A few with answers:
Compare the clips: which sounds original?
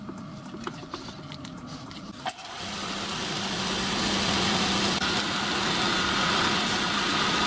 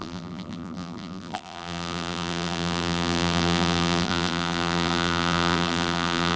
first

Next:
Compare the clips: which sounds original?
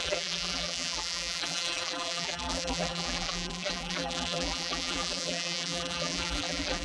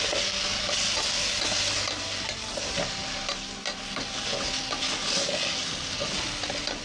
second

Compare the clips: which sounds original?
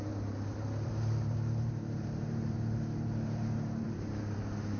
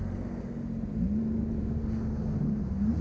second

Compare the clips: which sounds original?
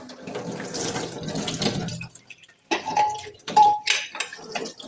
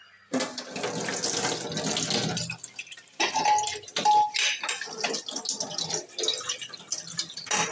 second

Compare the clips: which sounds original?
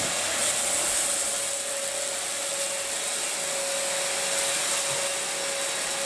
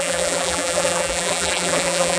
first